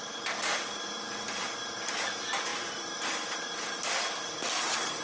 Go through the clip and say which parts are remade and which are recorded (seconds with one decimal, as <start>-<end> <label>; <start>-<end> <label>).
0.0-2.5 recorded; 2.5-3.6 remade; 3.6-5.0 recorded